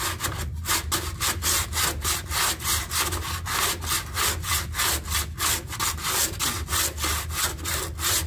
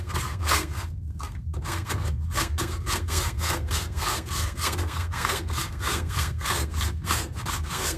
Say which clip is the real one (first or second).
first